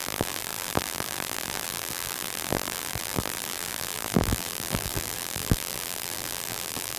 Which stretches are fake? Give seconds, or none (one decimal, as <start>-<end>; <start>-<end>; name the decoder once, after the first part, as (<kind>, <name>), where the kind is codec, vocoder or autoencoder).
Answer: 0.0-7.0 (vocoder, BigVGAN v2)